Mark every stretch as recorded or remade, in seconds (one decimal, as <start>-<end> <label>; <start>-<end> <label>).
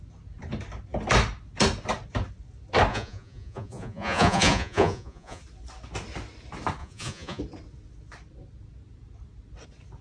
0.0-2.9 recorded; 2.9-5.4 remade; 5.4-6.8 recorded; 6.8-7.4 remade; 7.4-10.0 recorded